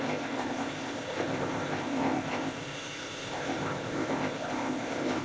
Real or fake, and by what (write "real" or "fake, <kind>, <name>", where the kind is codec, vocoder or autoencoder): fake, codec, ZipCodec